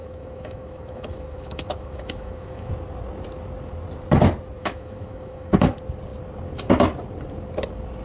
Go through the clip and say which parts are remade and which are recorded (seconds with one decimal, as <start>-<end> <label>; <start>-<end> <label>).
0.0-2.7 remade; 2.7-4.6 recorded; 4.6-5.5 remade; 5.5-8.0 recorded

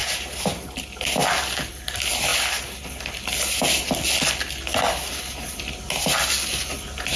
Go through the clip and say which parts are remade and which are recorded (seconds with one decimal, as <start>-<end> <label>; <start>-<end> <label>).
0.0-7.2 recorded